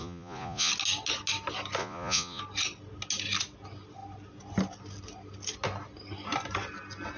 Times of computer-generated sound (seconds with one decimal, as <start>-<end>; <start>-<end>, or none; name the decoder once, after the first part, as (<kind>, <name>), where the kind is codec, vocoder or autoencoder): 0.0-0.7 (vocoder, Vocos); 1.8-2.4